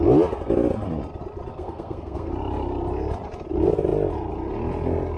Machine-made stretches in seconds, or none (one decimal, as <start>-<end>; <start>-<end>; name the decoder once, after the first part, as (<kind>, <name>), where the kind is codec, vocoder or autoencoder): 1.5-2.3 (codec, SNAC)